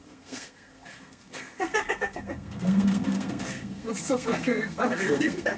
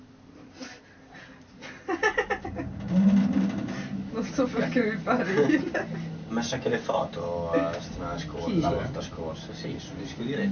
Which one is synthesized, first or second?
first